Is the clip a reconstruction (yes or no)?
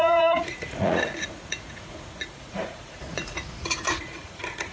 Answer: yes